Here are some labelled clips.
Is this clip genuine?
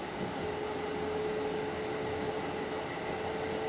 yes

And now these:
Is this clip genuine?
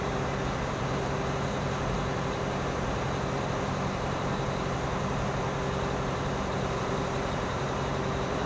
yes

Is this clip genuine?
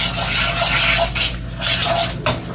yes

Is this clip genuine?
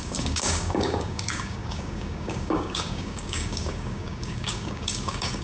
no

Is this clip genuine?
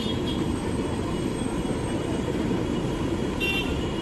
no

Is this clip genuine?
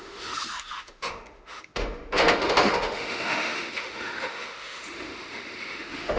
no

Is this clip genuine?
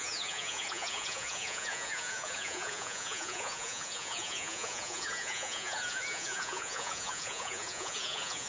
no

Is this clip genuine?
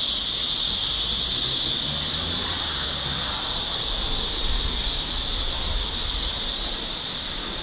yes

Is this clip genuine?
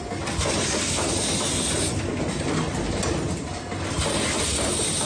yes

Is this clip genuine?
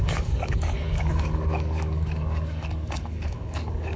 no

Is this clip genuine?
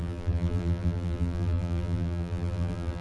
no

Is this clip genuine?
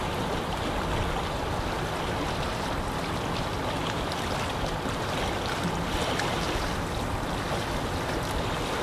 yes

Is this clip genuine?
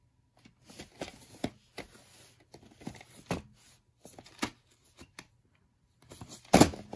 yes